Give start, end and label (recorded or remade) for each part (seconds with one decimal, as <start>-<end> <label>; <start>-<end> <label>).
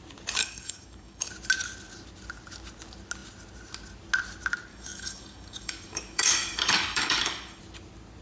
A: 0.0-0.4 recorded; 0.4-1.3 remade; 1.3-4.7 recorded; 4.7-7.6 remade; 7.6-8.2 recorded